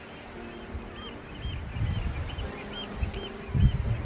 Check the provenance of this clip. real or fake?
real